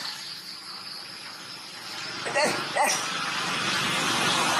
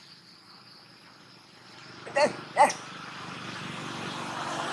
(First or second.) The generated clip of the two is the first